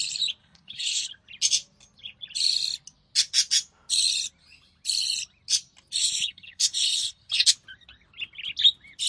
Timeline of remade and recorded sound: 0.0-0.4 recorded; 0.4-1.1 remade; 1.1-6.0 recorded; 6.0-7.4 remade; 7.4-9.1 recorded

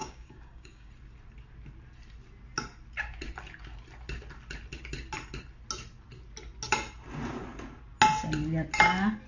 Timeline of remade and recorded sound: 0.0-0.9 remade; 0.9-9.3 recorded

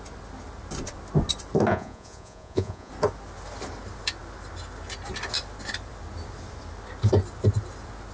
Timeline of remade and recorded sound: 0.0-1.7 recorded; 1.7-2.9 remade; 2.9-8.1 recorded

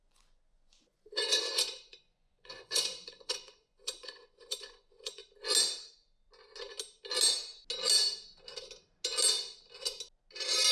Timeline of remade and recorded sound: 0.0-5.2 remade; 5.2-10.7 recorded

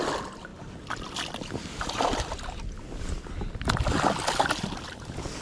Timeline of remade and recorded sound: 0.0-5.4 recorded